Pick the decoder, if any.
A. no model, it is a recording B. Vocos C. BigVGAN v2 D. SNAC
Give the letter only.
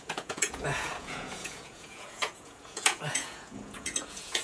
B